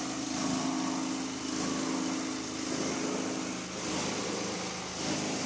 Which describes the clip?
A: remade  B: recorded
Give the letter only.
B